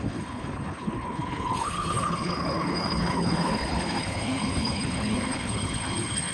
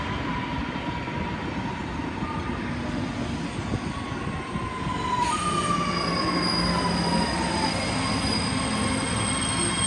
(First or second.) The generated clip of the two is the first